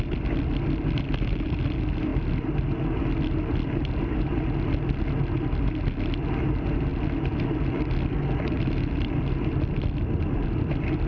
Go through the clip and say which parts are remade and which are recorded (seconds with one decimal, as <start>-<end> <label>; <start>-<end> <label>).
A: 0.0-11.1 recorded